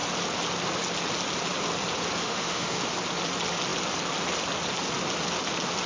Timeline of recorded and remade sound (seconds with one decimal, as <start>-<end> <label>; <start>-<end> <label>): 0.0-2.2 recorded; 2.2-2.8 remade; 2.8-5.9 recorded